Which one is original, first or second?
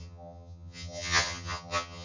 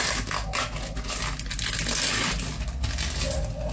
second